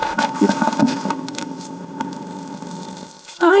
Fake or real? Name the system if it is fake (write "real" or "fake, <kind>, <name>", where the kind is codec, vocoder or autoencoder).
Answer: fake, codec, ZipCodec